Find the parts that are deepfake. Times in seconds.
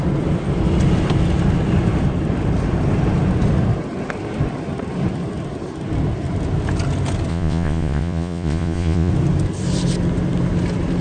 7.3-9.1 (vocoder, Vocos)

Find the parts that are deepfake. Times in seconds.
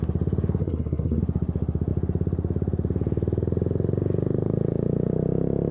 0.6-1.2 (codec, SNAC)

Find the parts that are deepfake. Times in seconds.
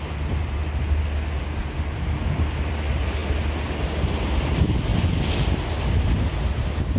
none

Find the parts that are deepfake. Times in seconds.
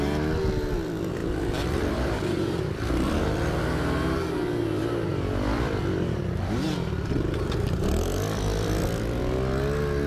1.2-3.6 (vocoder, BigVGAN v2); 5.1-6.2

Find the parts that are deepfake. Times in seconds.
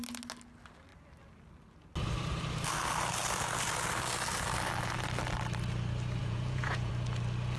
6.2-6.9 (vocoder, Vocos)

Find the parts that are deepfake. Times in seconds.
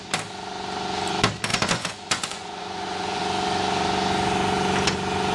1.5-3.2 (vocoder, Vocos)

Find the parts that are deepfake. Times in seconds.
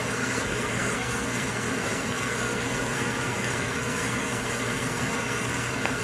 0.0-6.0 (codec, SNAC)